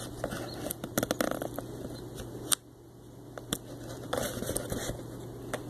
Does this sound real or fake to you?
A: real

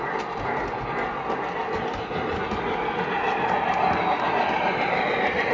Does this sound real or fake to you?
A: real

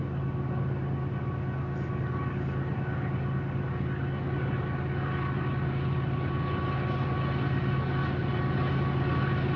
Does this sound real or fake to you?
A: real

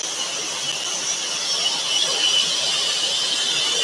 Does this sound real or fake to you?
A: real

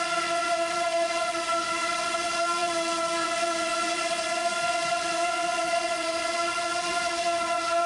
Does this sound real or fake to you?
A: fake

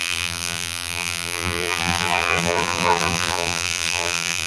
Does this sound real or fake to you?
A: fake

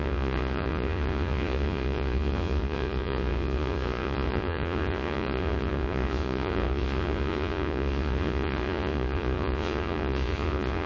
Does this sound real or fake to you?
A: fake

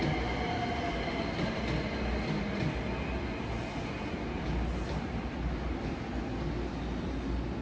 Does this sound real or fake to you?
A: real